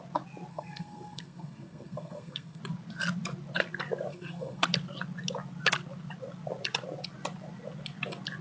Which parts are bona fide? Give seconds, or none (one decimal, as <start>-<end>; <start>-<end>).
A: 0.0-0.5; 2.6-4.1; 4.6-8.4